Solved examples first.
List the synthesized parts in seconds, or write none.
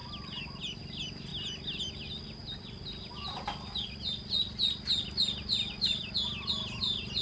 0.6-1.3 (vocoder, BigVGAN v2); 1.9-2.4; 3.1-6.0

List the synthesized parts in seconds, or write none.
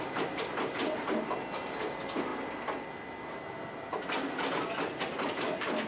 none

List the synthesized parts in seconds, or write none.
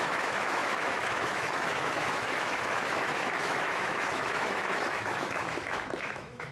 0.0-6.5 (autoencoder, DAC-VAE)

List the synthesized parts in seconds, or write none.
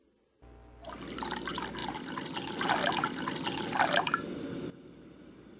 none